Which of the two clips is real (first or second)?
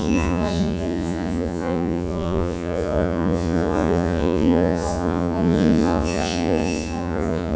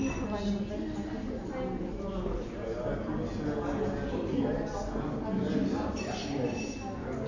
second